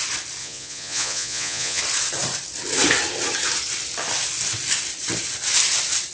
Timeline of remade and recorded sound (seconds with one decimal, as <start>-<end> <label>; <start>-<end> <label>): 0.0-0.4 recorded; 0.4-1.8 remade; 1.8-6.1 recorded